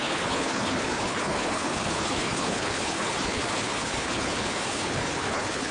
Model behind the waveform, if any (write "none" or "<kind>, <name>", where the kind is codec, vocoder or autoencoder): codec, HILCodec